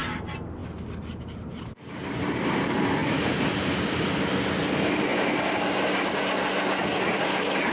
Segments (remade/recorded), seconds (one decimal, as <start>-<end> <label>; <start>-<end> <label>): 0.0-7.7 recorded